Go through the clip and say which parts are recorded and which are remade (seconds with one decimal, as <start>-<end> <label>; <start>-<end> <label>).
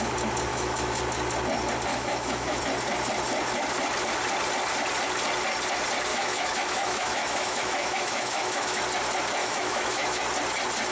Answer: 0.0-0.5 recorded; 0.5-1.0 remade; 1.0-1.9 recorded; 1.9-2.6 remade; 2.6-6.1 recorded; 6.1-8.8 remade; 8.8-9.4 recorded; 9.4-10.2 remade; 10.2-10.9 recorded